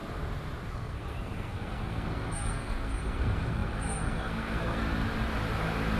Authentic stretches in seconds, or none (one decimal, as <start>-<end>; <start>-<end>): 0.0-0.7; 4.8-6.0